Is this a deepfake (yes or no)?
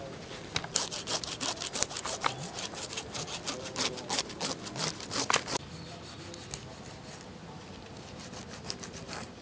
no